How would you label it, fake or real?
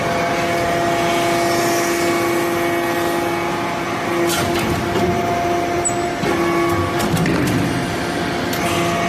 real